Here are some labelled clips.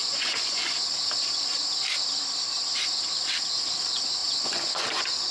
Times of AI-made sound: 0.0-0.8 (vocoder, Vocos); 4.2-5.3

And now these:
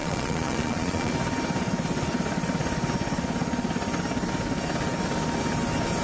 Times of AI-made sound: 0.0-1.1 (vocoder, Vocos)

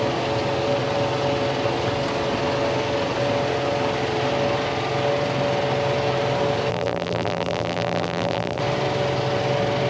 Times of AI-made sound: 6.7-8.6 (vocoder, BigVGAN v2)

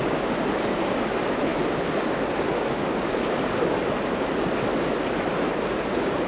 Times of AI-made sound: none

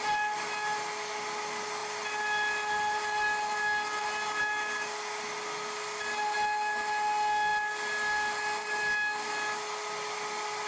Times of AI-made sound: none

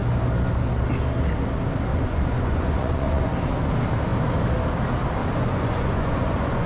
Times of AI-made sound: 1.9-3.3 (vocoder, Vocos); 5.2-6.7